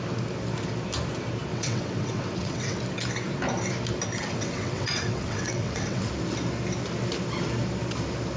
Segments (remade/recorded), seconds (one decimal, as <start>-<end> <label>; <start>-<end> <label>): 0.0-1.5 recorded; 1.5-2.8 remade; 2.8-4.2 recorded; 4.2-6.1 remade; 6.1-8.4 recorded